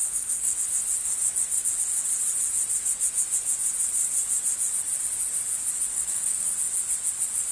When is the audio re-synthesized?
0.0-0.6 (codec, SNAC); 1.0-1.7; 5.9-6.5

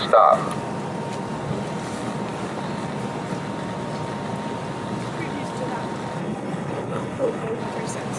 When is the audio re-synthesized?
6.2-7.6 (codec, HILCodec)

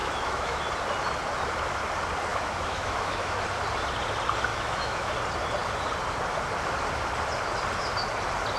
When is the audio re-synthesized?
0.0-0.6 (autoencoder, DAC-VAE); 2.3-3.4; 4.5-5.1

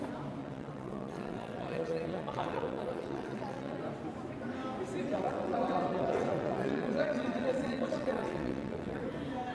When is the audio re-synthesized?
0.4-3.8 (vocoder, WaveNeXt); 5.1-9.0